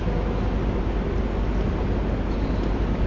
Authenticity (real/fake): real